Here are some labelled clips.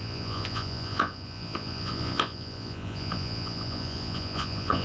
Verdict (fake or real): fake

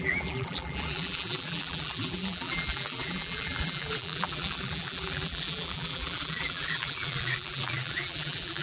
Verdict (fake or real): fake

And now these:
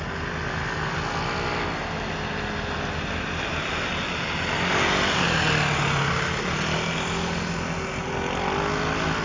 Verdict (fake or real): real